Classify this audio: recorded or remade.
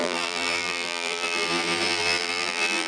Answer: remade